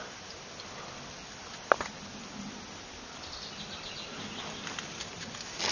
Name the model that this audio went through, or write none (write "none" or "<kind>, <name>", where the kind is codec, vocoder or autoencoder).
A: none